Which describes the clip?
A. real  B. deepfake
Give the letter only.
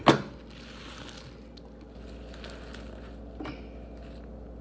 A